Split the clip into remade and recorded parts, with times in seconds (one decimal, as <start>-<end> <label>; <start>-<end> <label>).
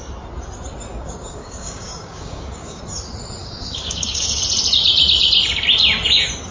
0.0-0.9 recorded; 0.9-2.8 remade; 2.8-3.4 recorded; 3.4-4.4 remade; 4.4-6.5 recorded